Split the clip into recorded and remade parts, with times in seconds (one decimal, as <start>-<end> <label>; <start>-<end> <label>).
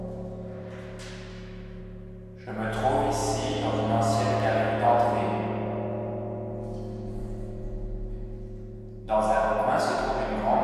0.0-1.3 recorded; 1.3-1.8 remade; 1.8-10.6 recorded